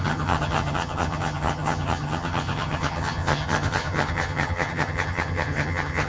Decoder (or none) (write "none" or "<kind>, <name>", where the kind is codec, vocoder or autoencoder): vocoder, HiFi-GAN